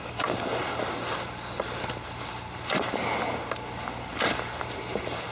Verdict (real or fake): real